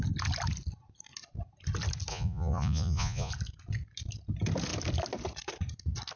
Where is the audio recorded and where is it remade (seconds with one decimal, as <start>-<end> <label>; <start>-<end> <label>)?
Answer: 0.0-2.1 recorded; 2.1-3.3 remade; 3.3-6.2 recorded